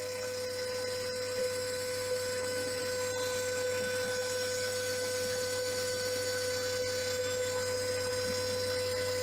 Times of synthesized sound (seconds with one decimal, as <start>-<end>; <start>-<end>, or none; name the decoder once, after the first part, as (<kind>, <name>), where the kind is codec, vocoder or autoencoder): 1.4-2.8 (autoencoder, DAC-VAE); 4.1-6.5